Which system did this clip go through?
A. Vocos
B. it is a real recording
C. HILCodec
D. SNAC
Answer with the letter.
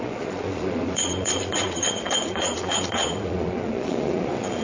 A